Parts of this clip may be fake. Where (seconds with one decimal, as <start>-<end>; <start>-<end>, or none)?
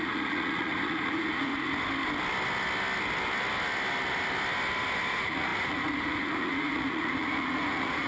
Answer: 0.0-1.5; 5.1-8.1